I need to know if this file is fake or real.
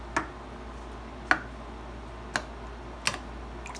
real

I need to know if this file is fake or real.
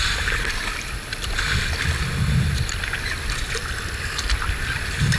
real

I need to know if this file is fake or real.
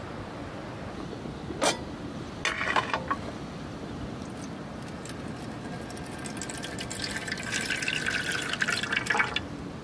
real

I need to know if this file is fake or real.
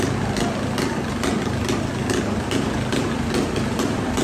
real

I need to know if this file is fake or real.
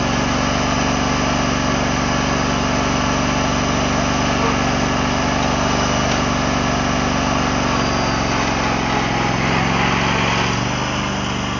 real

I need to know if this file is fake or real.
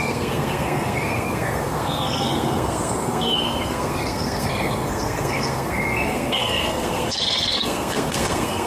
fake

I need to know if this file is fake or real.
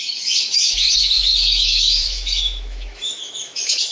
fake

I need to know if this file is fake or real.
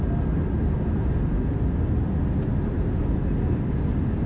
real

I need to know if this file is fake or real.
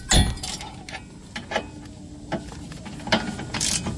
real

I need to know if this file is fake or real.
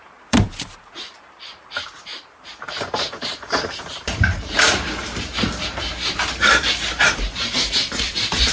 fake